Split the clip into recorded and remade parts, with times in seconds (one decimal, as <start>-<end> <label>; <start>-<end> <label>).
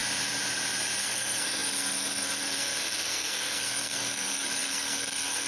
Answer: 0.0-1.0 recorded; 1.0-5.5 remade